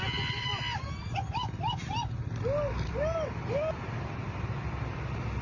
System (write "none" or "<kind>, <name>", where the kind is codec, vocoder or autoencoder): none